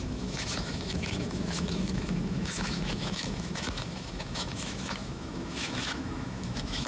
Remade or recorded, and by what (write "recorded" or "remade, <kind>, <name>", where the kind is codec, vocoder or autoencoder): remade, autoencoder, DAC-VAE